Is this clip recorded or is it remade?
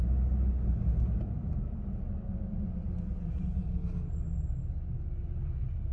recorded